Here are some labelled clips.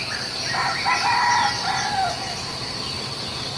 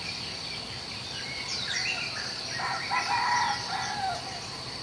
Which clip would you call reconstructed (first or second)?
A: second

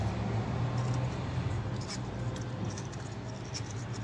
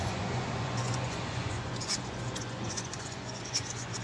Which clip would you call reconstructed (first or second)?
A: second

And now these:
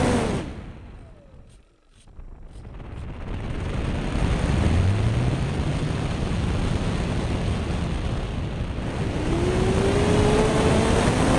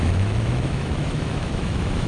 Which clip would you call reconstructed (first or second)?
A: second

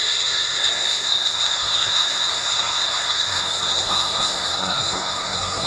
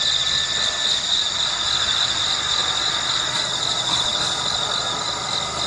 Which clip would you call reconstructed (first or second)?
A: first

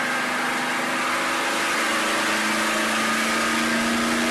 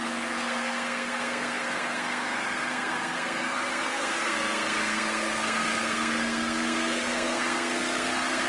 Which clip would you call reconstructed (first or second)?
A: second